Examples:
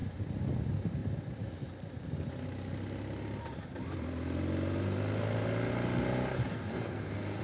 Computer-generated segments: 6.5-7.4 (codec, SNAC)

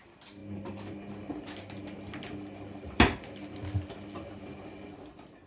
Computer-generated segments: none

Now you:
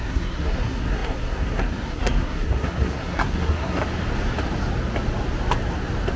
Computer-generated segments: 0.0-3.8 (codec, SNAC)

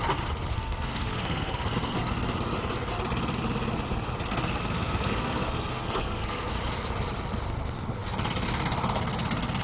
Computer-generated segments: 0.5-2.1 (codec, SNAC); 4.6-6.5

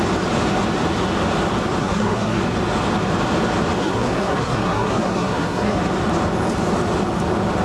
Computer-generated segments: 1.8-2.4 (codec, SNAC); 3.8-5.8

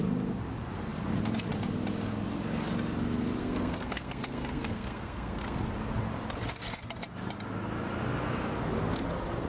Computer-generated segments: 3.4-5.6 (codec, SNAC)